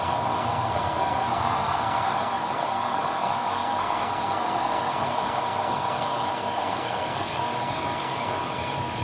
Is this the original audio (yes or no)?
no